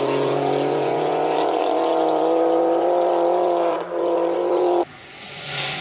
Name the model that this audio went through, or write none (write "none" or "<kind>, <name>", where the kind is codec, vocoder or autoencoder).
vocoder, Vocos